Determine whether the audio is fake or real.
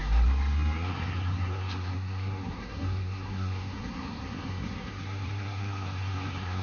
fake